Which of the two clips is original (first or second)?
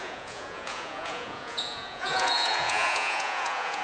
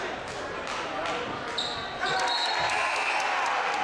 second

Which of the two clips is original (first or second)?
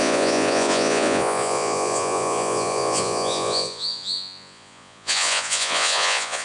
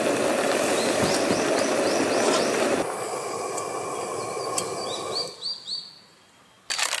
second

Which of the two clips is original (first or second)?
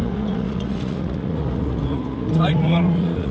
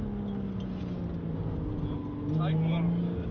second